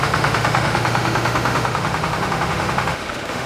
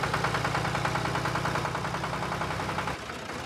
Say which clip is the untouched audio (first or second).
second